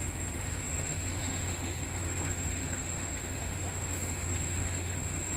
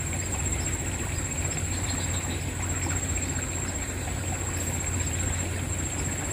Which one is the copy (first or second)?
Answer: first